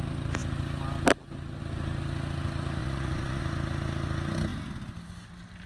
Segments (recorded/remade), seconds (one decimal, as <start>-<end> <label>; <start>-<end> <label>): 0.0-2.8 recorded; 2.8-3.4 remade; 3.4-5.7 recorded